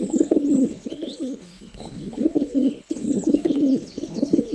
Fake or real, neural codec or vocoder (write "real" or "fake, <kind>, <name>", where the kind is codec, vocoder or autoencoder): fake, codec, HILCodec